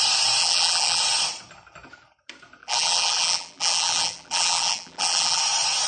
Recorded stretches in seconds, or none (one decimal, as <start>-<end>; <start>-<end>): 0.0-0.4; 1.0-2.6; 5.4-5.9